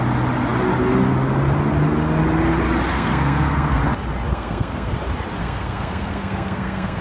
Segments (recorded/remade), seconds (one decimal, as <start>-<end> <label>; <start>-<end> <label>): 0.0-2.9 recorded; 2.9-3.8 remade; 3.8-4.3 recorded; 4.3-4.9 remade; 4.9-5.4 recorded; 5.4-7.0 remade